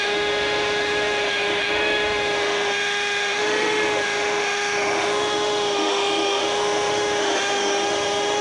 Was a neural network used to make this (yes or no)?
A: yes